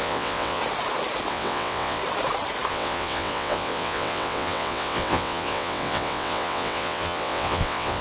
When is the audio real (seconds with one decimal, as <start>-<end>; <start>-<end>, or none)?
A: 0.6-1.3; 2.0-2.7